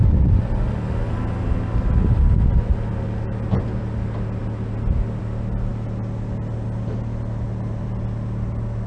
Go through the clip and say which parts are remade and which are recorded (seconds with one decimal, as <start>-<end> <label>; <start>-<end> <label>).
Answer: 0.0-8.9 recorded